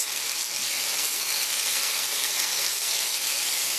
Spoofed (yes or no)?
yes